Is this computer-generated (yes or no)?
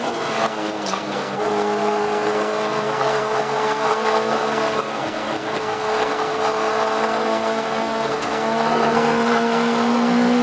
yes